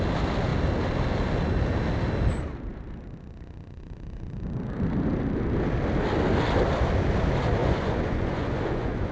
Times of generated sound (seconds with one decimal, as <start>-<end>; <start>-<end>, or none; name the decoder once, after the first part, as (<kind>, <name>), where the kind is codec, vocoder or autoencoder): 7.6-9.1 (vocoder, Vocos)